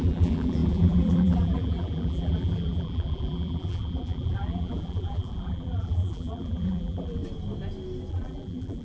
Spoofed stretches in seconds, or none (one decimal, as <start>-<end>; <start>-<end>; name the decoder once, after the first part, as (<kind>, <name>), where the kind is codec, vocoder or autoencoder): 0.0-7.2 (vocoder, BigVGAN v2); 8.1-8.8